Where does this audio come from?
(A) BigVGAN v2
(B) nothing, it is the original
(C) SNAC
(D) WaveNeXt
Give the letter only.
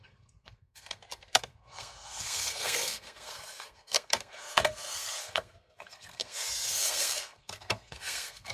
C